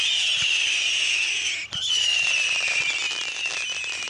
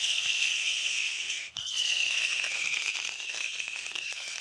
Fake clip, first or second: second